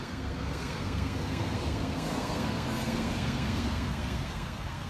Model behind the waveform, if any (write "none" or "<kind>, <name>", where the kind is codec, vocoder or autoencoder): codec, SNAC